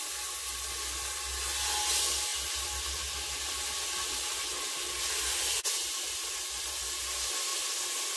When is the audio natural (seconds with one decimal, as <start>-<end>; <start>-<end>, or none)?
0.0-8.2